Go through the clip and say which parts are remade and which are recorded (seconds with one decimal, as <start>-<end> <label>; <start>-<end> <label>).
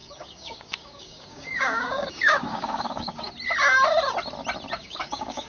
0.0-3.3 remade; 3.3-4.8 recorded; 4.8-5.5 remade